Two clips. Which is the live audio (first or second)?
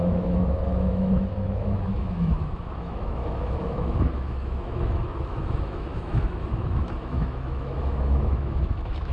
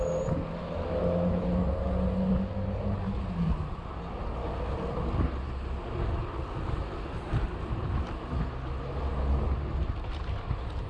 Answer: second